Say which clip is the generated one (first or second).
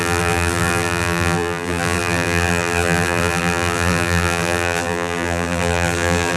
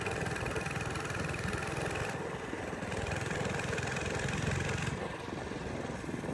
first